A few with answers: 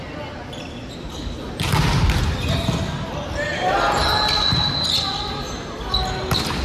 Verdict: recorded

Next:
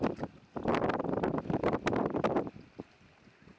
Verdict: recorded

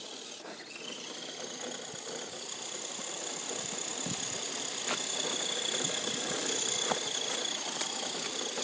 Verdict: recorded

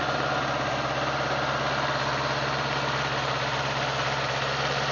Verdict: recorded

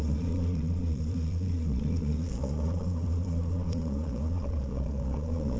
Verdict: remade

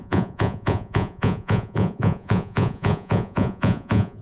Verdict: remade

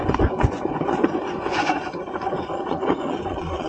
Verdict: remade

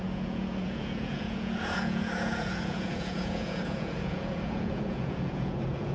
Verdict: remade